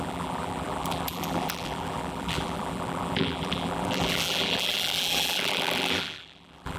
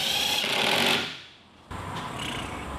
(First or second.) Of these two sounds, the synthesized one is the first